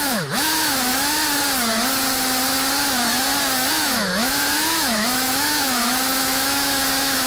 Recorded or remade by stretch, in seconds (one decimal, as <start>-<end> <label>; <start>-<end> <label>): 0.0-0.9 remade; 0.9-3.7 recorded; 3.7-7.3 remade